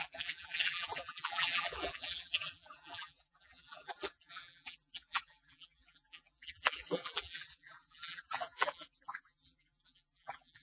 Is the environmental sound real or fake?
fake